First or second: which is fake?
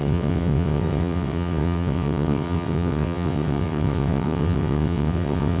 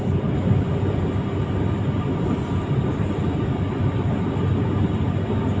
first